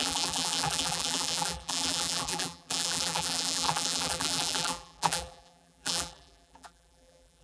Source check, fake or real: fake